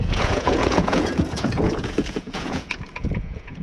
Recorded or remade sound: remade